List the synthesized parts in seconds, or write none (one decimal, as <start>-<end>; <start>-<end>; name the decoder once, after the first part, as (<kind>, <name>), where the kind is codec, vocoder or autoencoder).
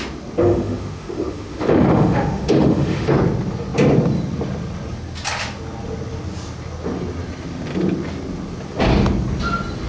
0.4-3.1 (autoencoder, DAC-VAE)